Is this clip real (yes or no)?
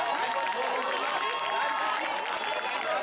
yes